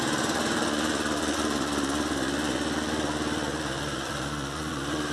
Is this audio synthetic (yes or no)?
yes